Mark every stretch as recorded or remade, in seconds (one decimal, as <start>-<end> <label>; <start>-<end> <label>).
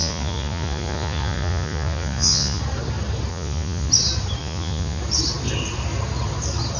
0.0-2.6 remade; 2.6-3.3 recorded; 3.3-3.9 remade; 3.9-4.4 recorded; 4.4-5.0 remade; 5.0-6.8 recorded